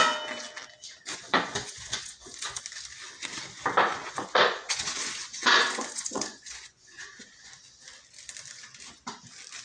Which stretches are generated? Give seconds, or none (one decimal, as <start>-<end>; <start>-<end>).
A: 1.1-2.6; 3.9-7.5